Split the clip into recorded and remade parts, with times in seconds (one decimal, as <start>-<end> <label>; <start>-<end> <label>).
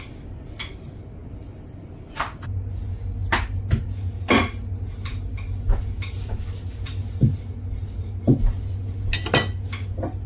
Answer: 0.0-10.3 recorded